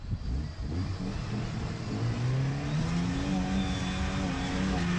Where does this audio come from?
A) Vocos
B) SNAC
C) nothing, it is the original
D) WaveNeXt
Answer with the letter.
C